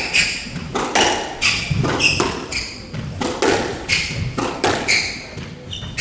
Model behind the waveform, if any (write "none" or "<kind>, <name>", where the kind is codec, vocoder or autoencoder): none